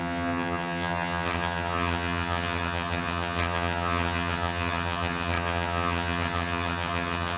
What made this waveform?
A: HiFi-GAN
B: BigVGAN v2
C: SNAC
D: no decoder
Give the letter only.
A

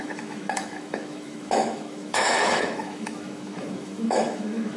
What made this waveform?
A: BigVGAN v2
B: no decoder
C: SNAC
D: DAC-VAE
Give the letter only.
D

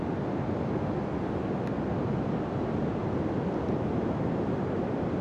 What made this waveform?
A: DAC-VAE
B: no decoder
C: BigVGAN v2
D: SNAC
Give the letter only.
B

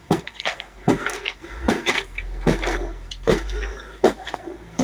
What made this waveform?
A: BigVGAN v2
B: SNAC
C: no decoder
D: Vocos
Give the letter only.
B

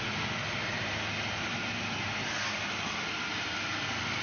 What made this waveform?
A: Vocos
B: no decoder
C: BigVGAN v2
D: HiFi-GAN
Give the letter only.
B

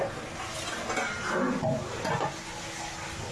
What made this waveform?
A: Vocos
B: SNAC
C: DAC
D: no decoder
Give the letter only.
D